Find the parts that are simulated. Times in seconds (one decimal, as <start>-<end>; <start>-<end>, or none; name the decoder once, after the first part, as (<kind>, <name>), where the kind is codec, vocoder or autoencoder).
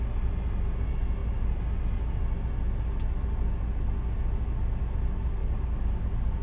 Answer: 5.4-6.0 (codec, DAC)